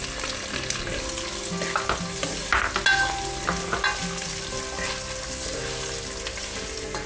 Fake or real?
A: real